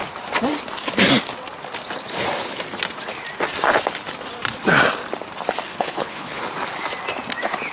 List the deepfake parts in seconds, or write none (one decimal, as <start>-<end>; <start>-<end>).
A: 5.7-6.4